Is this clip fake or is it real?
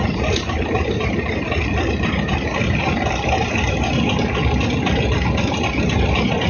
fake